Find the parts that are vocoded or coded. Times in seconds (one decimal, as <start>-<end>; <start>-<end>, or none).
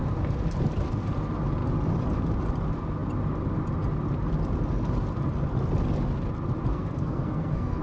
6.7-7.8